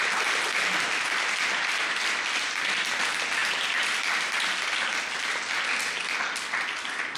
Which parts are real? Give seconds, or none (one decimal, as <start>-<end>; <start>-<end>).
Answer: 0.0-7.2